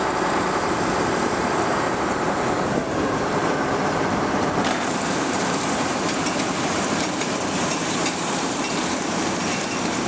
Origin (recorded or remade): remade